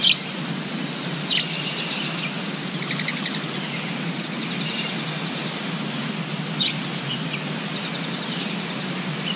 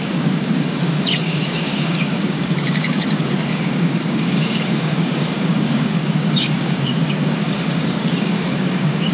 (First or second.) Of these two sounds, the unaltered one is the first